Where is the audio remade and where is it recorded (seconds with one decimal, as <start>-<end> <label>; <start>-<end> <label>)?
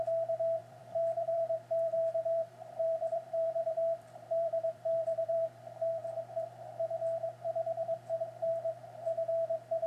0.0-0.6 recorded; 0.6-5.6 remade; 5.6-9.9 recorded